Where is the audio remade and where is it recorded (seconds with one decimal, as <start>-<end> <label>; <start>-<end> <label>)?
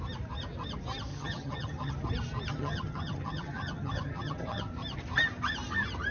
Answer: 0.0-1.1 recorded; 1.1-1.9 remade; 1.9-2.5 recorded; 2.5-4.7 remade; 4.7-6.1 recorded